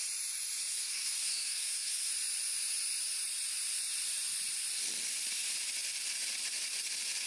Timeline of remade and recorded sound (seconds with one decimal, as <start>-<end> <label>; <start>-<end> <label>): 0.0-0.7 recorded; 0.7-2.1 remade; 2.1-7.3 recorded